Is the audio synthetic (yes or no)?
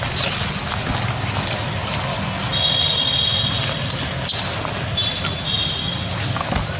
no